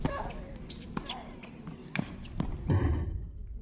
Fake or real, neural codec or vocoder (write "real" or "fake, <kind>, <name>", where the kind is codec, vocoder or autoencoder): fake, vocoder, BigVGAN v2